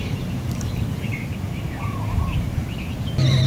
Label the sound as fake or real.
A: fake